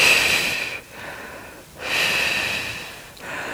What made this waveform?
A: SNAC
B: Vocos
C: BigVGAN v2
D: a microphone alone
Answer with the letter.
D